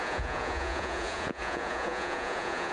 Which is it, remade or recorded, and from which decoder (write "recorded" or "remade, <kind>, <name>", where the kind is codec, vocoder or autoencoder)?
remade, vocoder, Vocos